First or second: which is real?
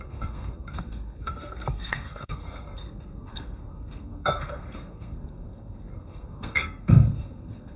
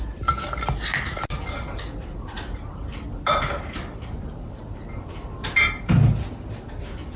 second